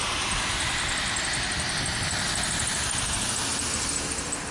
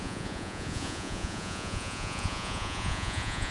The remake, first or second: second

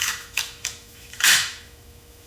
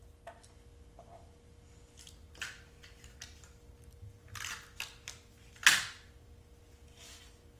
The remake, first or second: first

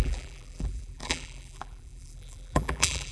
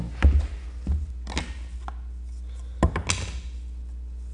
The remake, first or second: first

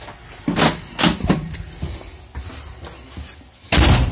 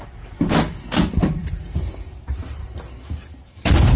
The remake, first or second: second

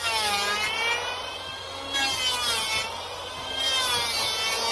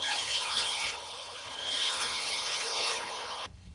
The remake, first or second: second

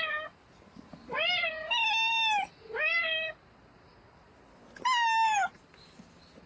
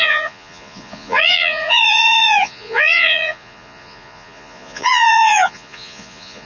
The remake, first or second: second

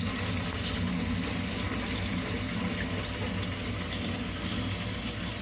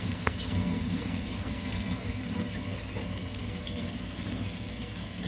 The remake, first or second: second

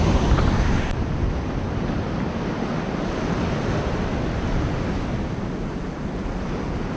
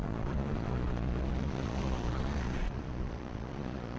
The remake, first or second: second